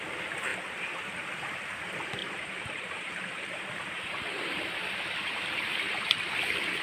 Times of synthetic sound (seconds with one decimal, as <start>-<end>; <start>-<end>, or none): 2.2-6.3